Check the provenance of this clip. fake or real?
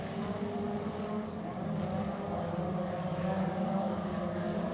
fake